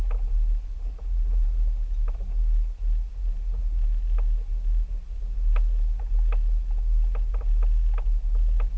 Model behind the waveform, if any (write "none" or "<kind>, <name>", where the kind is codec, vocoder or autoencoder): none